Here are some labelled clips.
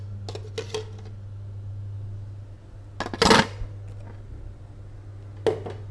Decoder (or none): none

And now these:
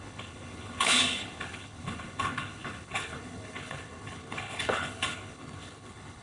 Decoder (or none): codec, HILCodec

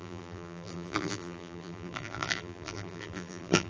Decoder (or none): vocoder, BigVGAN v2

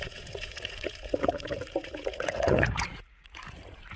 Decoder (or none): vocoder, Vocos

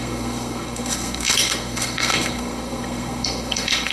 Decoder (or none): codec, SNAC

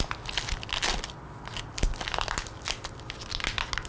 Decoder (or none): none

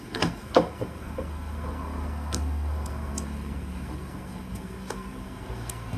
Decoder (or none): codec, SNAC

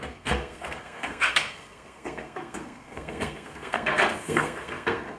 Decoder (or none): codec, SNAC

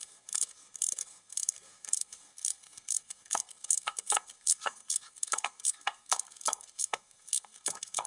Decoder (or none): codec, SNAC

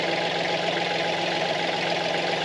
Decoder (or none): none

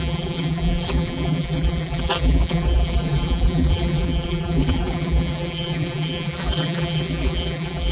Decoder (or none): vocoder, BigVGAN v2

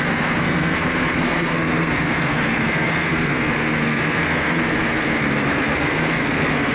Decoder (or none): codec, SNAC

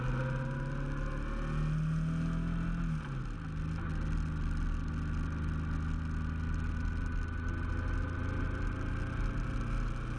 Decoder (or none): none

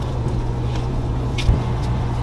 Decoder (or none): vocoder, Vocos